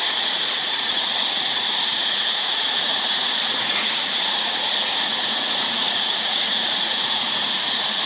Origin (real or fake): fake